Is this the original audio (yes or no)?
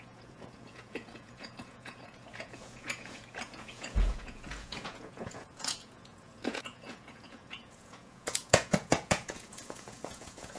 no